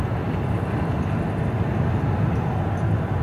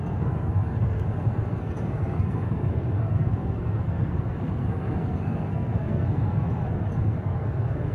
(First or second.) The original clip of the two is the first